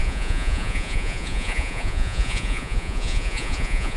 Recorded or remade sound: remade